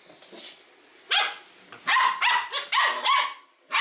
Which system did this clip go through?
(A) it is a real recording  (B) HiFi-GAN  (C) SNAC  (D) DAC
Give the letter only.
A